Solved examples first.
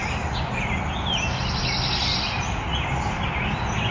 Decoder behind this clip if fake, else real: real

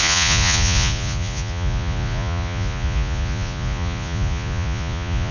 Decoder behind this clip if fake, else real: fake, vocoder, Vocos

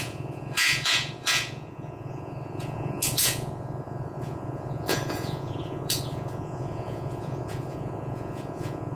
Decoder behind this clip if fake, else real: fake, vocoder, Vocos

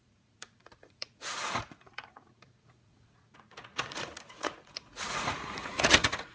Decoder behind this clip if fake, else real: fake, vocoder, Vocos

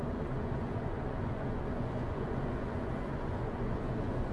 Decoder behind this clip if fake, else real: fake, vocoder, Vocos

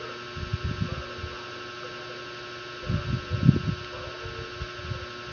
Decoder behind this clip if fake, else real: real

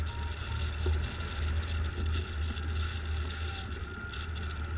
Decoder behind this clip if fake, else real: real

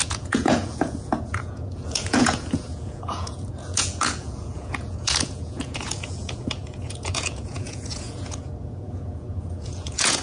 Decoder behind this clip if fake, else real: fake, vocoder, Vocos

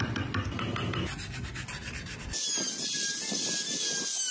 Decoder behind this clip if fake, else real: real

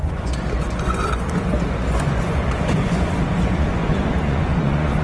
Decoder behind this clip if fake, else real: fake, vocoder, Vocos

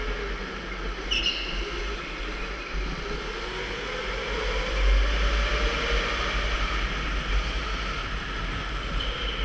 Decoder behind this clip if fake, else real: real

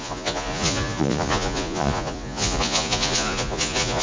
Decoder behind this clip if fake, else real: fake, vocoder, Vocos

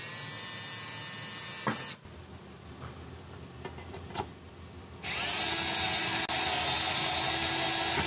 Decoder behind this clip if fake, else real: real